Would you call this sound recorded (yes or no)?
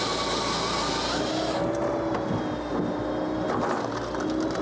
yes